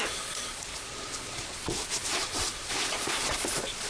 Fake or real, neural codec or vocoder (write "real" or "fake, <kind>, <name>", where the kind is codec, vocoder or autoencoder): fake, vocoder, Vocos